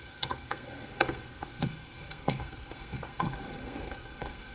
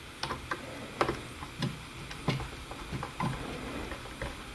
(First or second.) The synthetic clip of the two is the first